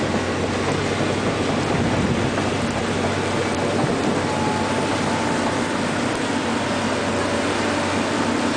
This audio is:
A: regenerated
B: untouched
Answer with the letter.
B